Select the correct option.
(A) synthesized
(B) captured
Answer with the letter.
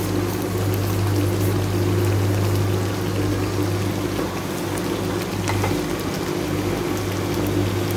B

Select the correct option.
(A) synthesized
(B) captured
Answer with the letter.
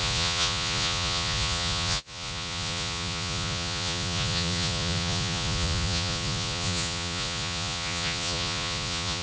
A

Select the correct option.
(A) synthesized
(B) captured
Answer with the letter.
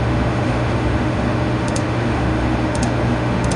A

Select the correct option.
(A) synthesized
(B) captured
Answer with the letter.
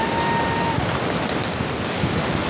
B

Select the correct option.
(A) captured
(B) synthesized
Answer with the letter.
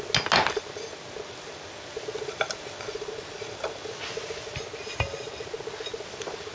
A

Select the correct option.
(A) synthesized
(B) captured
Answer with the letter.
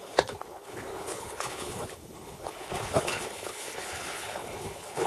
A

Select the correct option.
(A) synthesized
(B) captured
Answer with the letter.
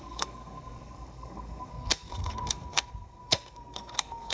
A